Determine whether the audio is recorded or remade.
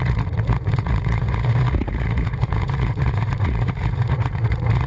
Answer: remade